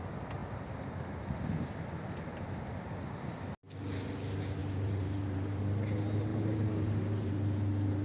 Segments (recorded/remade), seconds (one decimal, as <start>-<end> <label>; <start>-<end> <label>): 0.0-0.4 recorded; 0.4-0.9 remade; 0.9-4.6 recorded; 4.6-5.6 remade; 5.6-6.3 recorded; 6.3-7.3 remade; 7.3-8.0 recorded

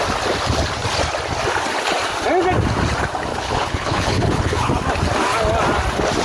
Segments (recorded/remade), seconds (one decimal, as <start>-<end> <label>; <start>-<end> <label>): 0.0-3.3 recorded; 3.3-4.7 remade; 4.7-6.2 recorded

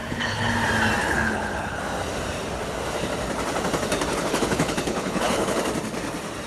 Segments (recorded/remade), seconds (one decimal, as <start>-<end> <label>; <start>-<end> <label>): 0.0-0.5 remade; 0.5-1.0 recorded; 1.0-1.8 remade; 1.8-4.1 recorded; 4.1-5.6 remade; 5.6-6.5 recorded

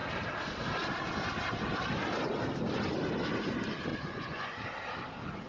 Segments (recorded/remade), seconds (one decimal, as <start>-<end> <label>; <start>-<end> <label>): 0.0-3.9 recorded; 3.9-4.6 remade; 4.6-5.5 recorded

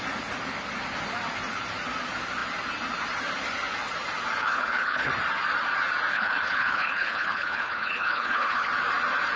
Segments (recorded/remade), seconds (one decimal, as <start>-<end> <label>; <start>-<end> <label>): 0.0-4.4 recorded; 4.4-5.1 remade; 5.1-6.1 recorded; 6.1-8.7 remade; 8.7-9.4 recorded